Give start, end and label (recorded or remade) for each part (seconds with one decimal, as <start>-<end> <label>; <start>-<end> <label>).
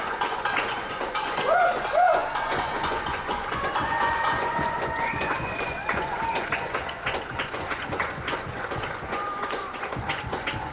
0.0-10.7 remade